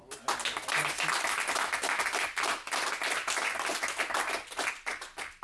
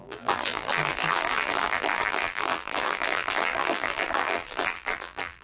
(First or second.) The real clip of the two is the first